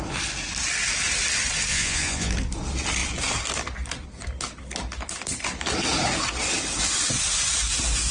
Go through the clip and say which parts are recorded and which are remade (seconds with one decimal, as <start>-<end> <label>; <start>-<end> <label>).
0.0-1.7 recorded; 1.7-2.3 remade; 2.3-8.1 recorded

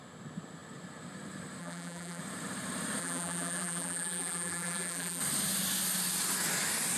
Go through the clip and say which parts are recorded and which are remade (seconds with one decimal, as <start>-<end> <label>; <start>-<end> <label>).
0.0-1.6 recorded; 1.6-2.2 remade; 2.2-3.0 recorded; 3.0-5.2 remade; 5.2-7.0 recorded

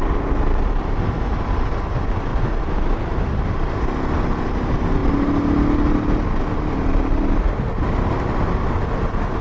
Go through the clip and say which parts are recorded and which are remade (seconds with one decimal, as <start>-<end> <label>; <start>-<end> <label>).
0.0-9.4 recorded

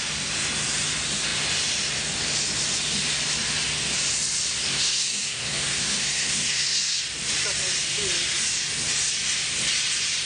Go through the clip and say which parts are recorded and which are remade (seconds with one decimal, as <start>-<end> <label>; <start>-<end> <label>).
0.0-4.6 recorded; 4.6-7.0 remade; 7.0-10.3 recorded